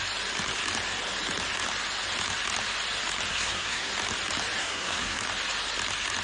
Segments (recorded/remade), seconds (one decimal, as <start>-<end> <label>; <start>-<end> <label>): 0.0-3.3 recorded; 3.3-3.9 remade; 3.9-4.6 recorded; 4.6-5.2 remade; 5.2-6.2 recorded